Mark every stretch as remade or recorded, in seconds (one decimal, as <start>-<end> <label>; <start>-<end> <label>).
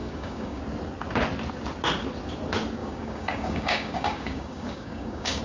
0.0-0.6 remade; 0.6-2.8 recorded; 2.8-5.4 remade